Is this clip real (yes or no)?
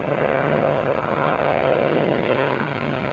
no